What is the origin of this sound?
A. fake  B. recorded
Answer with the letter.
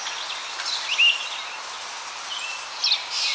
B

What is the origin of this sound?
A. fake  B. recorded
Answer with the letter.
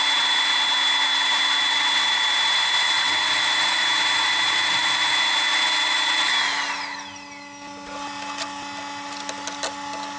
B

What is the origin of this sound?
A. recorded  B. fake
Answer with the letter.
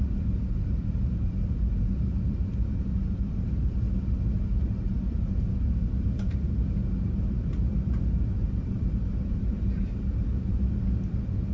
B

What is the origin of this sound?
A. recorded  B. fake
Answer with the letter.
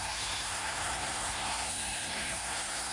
B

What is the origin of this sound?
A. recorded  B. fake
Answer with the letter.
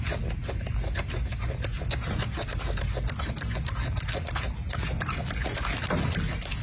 A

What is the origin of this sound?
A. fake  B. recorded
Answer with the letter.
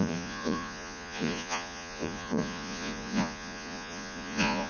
A